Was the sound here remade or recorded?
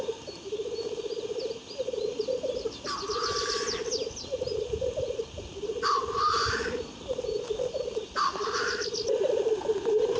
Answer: recorded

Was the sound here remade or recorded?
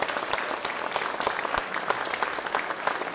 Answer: recorded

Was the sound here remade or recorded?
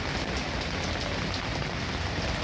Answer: recorded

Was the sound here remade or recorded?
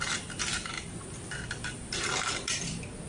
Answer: recorded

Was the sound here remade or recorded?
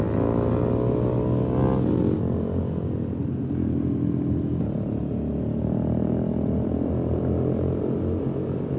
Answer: recorded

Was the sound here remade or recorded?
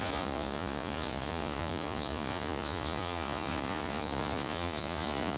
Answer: remade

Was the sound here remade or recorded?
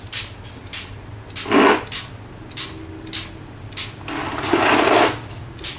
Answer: recorded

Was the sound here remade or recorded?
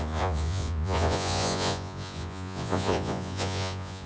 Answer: remade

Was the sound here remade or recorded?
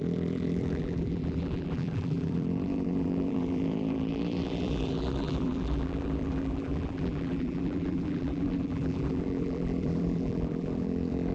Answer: remade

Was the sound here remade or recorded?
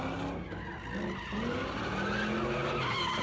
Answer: recorded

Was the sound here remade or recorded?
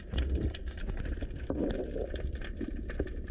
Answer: recorded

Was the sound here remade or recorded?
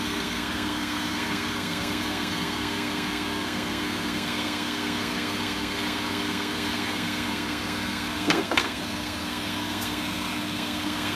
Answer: remade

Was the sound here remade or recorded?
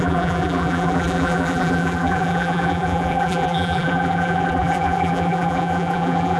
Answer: remade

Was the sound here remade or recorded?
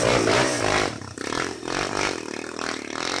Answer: remade